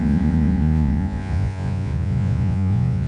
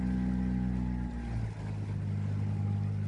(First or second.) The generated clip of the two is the first